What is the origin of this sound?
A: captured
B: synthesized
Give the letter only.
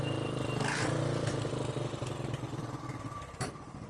B